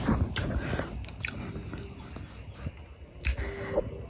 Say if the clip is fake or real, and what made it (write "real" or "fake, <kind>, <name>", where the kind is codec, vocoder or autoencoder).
real